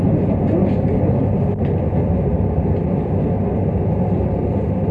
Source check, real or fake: real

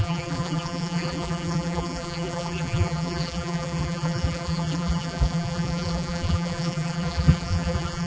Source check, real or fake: fake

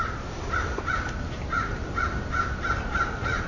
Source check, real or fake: real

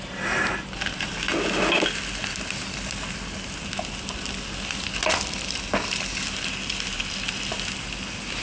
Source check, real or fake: real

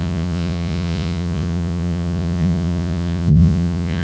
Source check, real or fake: fake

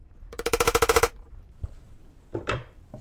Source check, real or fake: fake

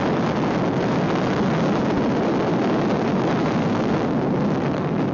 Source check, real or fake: real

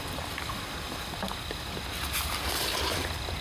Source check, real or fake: real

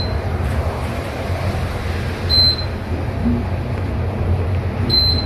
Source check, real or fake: real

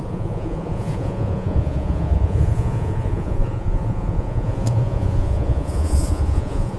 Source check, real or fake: fake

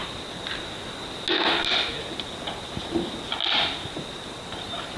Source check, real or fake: real